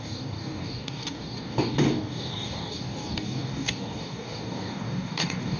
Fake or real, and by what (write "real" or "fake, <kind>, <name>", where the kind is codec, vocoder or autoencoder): fake, codec, DAC